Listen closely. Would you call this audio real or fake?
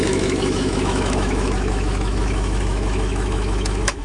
fake